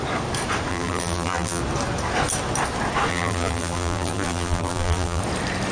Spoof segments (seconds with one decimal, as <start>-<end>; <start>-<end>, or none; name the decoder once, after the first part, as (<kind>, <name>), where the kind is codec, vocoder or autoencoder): 0.7-1.6 (vocoder, BigVGAN v2); 3.1-5.2

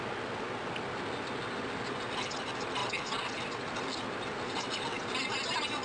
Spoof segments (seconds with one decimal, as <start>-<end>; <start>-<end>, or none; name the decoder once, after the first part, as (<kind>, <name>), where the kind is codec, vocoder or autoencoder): none

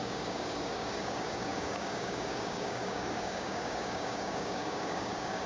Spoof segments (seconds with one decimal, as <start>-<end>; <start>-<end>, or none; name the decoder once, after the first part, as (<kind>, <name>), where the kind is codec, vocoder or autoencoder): 0.0-5.5 (codec, DAC)

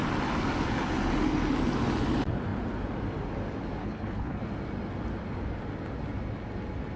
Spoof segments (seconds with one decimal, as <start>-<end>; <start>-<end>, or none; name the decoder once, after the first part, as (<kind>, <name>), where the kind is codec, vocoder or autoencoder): 3.8-4.4 (codec, HILCodec)

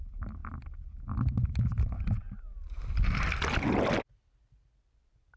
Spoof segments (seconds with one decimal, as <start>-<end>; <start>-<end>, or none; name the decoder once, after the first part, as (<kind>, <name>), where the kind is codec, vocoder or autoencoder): none

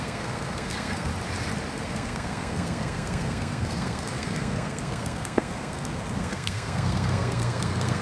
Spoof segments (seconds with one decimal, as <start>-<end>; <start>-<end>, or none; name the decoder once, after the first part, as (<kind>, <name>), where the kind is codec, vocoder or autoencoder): 0.0-1.1 (codec, SNAC); 1.7-8.0

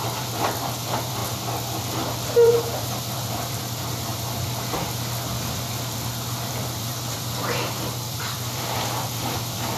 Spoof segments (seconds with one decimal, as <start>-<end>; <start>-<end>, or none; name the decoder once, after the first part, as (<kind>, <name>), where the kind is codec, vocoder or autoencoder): 0.0-1.2 (vocoder, BigVGAN v2); 2.6-9.8